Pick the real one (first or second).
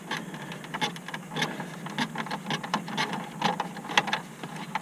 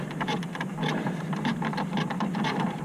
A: first